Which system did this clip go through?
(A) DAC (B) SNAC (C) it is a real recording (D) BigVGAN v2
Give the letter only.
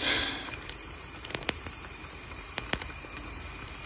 D